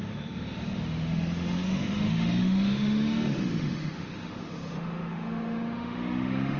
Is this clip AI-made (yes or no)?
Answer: yes